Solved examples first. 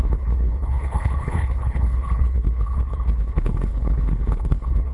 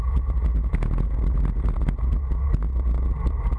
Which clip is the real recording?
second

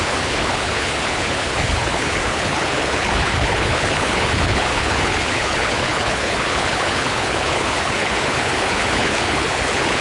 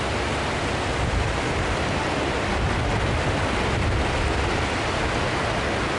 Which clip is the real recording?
second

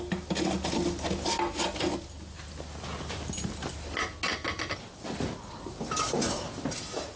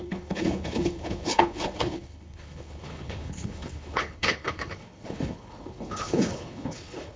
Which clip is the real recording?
first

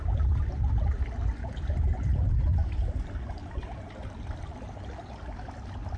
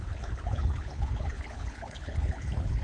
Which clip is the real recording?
first